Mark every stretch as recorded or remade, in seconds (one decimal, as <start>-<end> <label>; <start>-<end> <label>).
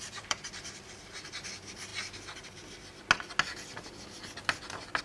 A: 0.0-1.9 remade; 1.9-5.0 recorded